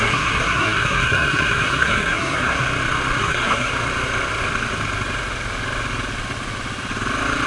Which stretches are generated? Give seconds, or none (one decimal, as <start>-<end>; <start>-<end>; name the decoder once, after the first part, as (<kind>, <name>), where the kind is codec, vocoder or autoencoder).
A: 0.0-2.6 (codec, SNAC); 3.2-3.7